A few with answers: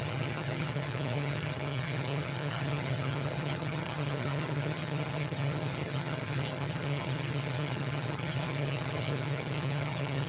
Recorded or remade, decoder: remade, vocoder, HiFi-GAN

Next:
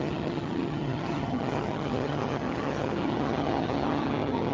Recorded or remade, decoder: remade, vocoder, HiFi-GAN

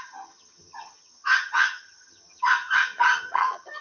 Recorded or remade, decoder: remade, vocoder, HiFi-GAN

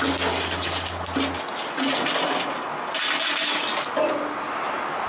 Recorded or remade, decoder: recorded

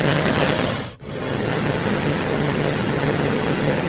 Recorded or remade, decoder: remade, vocoder, HiFi-GAN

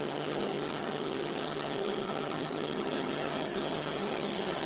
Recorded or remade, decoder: remade, vocoder, HiFi-GAN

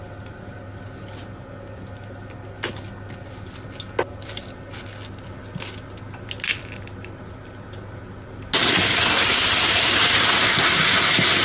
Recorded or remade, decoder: recorded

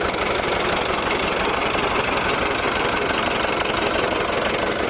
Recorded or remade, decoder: recorded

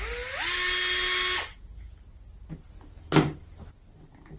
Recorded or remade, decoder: recorded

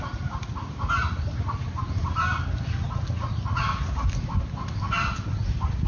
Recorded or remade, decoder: recorded